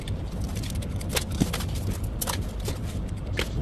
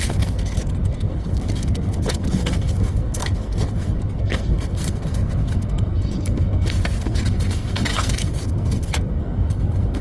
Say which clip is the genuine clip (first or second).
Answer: first